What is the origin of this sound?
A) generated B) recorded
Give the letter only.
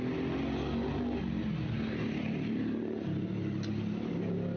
B